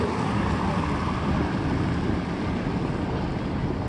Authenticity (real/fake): real